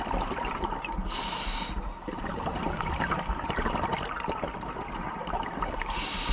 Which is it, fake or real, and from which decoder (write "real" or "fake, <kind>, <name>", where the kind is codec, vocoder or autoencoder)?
real